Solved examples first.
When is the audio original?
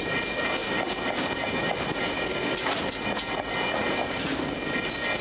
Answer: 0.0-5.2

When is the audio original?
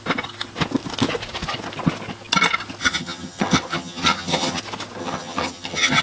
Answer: 0.0-2.8; 4.6-5.0